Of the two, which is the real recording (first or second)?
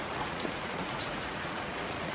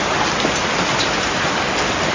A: second